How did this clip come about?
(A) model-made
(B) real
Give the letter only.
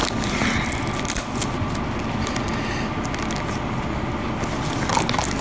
B